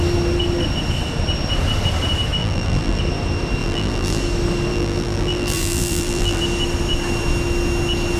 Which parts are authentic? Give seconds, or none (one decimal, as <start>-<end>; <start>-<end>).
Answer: 0.0-2.4; 3.0-3.6; 4.2-4.7; 6.4-8.2